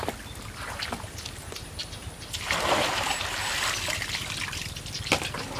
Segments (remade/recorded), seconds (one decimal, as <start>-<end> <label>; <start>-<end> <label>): 0.0-5.6 recorded